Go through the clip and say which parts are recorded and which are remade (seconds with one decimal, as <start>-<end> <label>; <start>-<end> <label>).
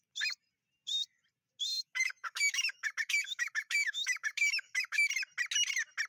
0.0-1.7 recorded; 1.7-5.1 remade; 5.1-6.1 recorded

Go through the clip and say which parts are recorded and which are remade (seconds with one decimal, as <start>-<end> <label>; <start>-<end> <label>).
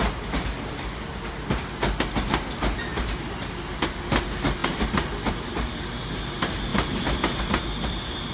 0.0-6.7 recorded; 6.7-7.4 remade; 7.4-8.3 recorded